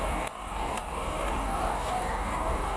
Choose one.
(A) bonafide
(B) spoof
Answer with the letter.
B